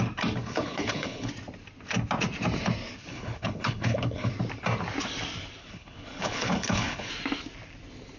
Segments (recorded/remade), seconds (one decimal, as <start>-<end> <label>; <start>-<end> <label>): 0.0-0.4 recorded; 0.4-1.3 remade; 1.3-3.1 recorded; 3.1-4.3 remade; 4.3-5.6 recorded; 5.6-7.1 remade; 7.1-8.2 recorded